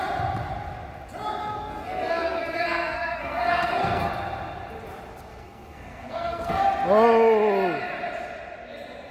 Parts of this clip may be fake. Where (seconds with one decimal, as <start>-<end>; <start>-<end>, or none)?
1.4-4.1; 5.3-6.6